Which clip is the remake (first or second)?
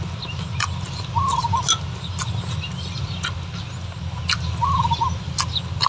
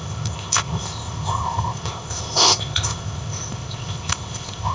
second